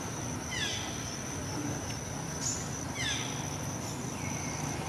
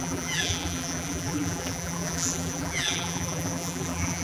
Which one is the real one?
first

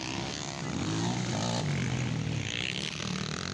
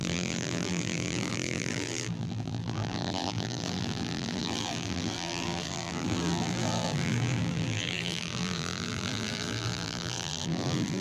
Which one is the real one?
first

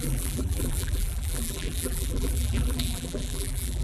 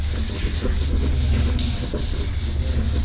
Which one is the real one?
second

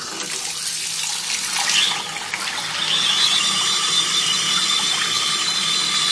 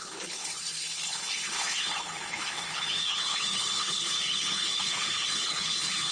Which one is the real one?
first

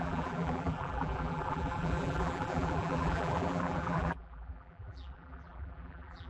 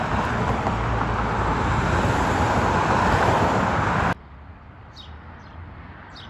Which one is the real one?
second